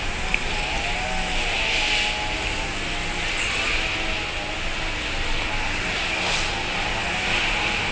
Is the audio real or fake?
real